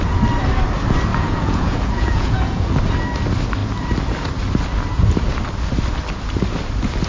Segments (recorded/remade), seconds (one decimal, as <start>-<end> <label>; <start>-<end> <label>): 0.0-1.1 recorded; 1.1-2.8 remade; 2.8-7.1 recorded